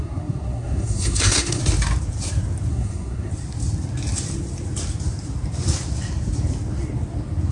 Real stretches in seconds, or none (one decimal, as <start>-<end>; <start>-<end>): 1.6-2.7; 3.3-7.5